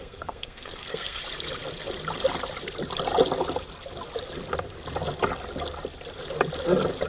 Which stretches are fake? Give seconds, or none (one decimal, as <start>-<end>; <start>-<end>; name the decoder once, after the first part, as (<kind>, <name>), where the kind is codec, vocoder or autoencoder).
0.0-1.2 (codec, SNAC)